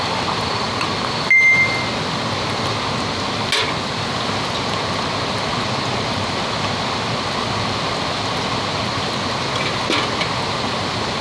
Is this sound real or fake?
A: real